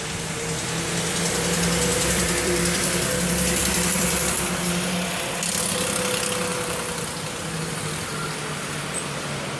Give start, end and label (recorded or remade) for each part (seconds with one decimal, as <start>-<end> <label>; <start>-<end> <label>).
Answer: 0.0-1.9 recorded; 1.9-5.6 remade; 5.6-6.5 recorded; 6.5-8.1 remade; 8.1-9.6 recorded